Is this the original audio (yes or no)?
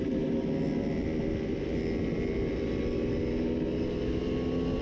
yes